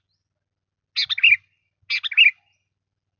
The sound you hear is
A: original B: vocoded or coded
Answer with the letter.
A